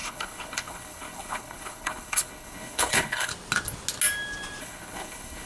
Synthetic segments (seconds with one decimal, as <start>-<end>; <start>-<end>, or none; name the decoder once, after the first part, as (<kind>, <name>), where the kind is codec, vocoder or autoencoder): 0.0-3.3 (codec, HILCodec); 4.6-5.5